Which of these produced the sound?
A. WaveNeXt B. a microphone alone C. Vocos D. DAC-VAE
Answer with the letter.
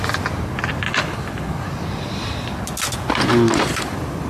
B